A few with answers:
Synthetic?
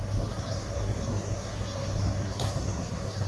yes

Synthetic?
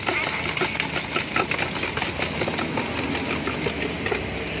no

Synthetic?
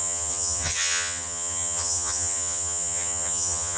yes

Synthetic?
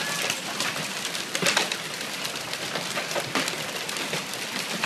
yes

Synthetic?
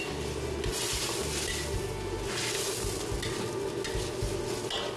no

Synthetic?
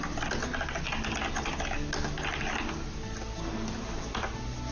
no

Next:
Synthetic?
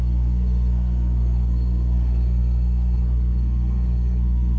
yes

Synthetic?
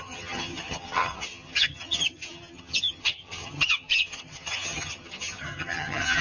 yes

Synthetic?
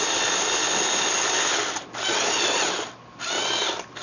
no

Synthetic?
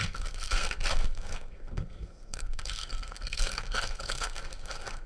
yes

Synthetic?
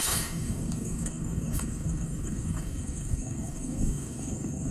yes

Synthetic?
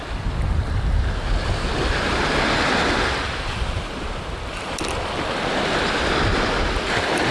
no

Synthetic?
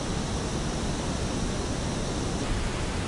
no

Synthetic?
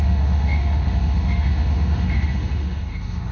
yes